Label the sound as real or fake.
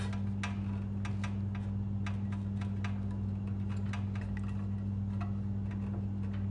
real